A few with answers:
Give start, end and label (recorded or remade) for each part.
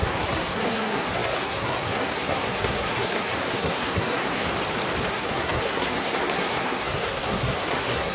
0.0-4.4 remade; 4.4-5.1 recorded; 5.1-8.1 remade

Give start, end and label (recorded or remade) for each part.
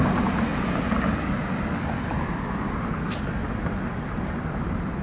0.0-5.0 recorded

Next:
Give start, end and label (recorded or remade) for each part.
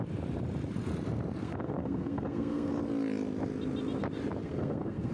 0.0-1.4 recorded; 1.4-2.7 remade; 2.7-4.4 recorded; 4.4-5.1 remade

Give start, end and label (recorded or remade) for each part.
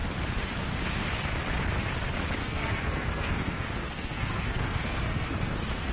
0.0-2.4 recorded; 2.4-5.9 remade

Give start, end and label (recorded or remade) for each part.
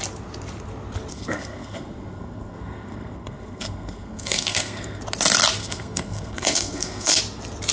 0.0-1.1 recorded; 1.1-5.0 remade; 5.0-5.6 recorded; 5.6-7.2 remade; 7.2-7.7 recorded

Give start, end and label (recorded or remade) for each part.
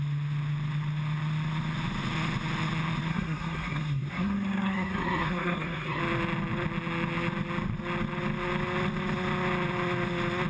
0.0-3.1 recorded; 3.1-6.0 remade; 6.0-10.5 recorded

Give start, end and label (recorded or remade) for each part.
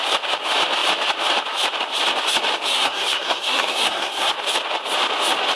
0.0-2.7 recorded; 2.7-4.3 remade; 4.3-5.6 recorded